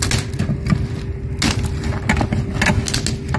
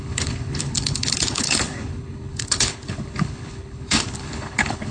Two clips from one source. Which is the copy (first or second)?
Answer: second